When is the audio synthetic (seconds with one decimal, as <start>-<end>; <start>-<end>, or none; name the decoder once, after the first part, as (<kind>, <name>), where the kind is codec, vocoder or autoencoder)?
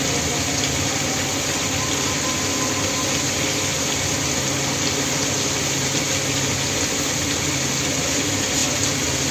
none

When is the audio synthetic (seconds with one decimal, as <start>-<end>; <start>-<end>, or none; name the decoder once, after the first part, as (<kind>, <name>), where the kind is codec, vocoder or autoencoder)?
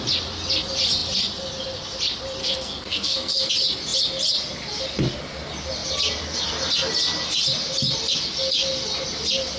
2.4-3.5 (codec, SNAC)